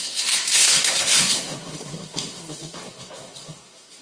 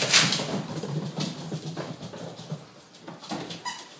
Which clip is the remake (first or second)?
first